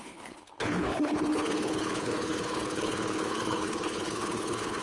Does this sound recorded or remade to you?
remade